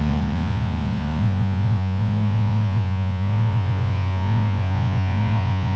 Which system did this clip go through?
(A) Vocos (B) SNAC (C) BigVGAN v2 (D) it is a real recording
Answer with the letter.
A